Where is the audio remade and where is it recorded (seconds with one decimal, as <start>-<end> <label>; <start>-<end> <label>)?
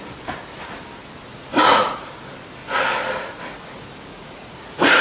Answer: 0.0-1.4 recorded; 1.4-2.1 remade; 2.1-2.6 recorded; 2.6-3.6 remade; 3.6-4.1 recorded; 4.1-5.0 remade